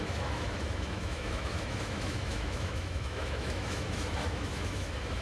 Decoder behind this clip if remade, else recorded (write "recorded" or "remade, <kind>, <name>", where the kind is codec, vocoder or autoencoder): remade, autoencoder, DAC-VAE